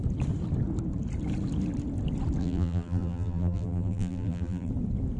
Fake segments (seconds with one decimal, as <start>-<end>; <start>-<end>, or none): 2.4-4.7